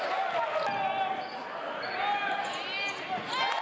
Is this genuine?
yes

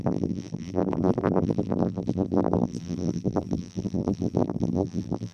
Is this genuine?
no